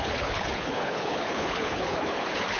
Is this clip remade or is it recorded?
remade